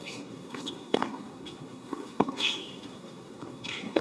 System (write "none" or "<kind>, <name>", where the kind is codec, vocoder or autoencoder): codec, SNAC